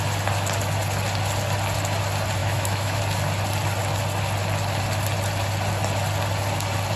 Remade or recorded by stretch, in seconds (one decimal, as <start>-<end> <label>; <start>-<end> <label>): 0.0-2.4 recorded; 2.4-3.0 remade; 3.0-7.0 recorded